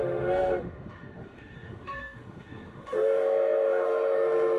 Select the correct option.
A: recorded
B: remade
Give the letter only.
B